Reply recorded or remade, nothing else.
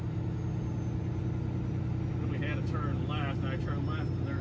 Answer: recorded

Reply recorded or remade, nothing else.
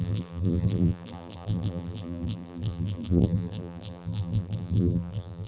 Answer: remade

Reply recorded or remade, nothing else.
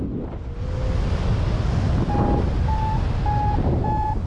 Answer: recorded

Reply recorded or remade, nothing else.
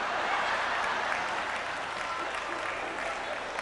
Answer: recorded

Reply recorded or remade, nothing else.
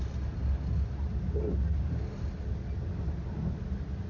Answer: recorded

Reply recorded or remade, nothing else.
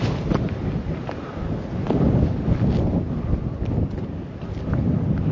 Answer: recorded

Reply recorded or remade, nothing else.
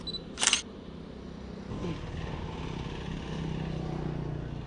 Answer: recorded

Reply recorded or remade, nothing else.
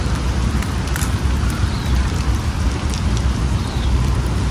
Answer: remade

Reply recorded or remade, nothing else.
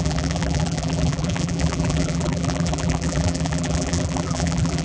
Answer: remade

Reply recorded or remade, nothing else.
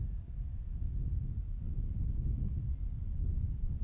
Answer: recorded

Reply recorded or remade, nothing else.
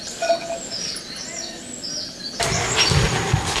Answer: recorded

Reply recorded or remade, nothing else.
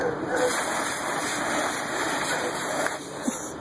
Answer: remade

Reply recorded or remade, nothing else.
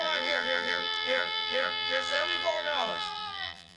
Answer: remade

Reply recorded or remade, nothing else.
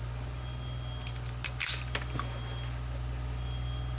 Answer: recorded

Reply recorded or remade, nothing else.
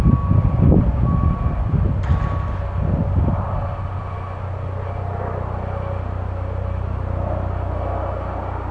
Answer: remade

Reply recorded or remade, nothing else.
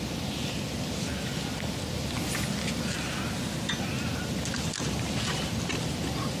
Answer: recorded